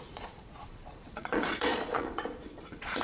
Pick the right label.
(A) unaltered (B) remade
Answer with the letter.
B